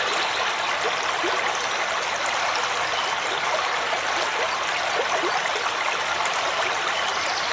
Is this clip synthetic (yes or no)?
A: no